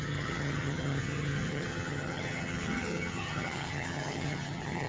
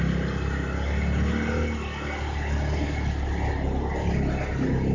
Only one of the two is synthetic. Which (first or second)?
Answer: first